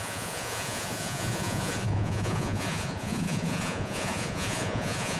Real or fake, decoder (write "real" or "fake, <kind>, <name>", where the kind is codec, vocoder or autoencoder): fake, vocoder, Vocos